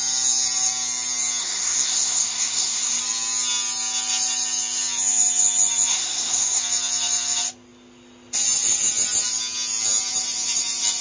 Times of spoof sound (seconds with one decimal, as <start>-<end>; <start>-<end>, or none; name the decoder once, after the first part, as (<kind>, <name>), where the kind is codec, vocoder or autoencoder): 1.4-3.0 (codec, SNAC); 5.9-6.6